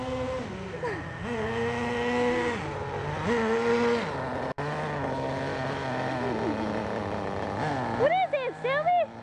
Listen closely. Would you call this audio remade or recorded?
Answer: recorded